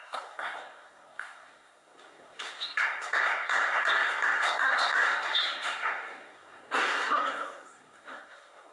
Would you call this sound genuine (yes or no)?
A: no